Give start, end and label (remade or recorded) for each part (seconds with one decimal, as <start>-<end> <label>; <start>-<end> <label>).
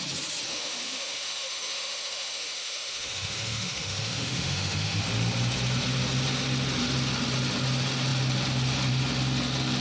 0.0-0.5 recorded; 0.5-5.0 remade; 5.0-9.8 recorded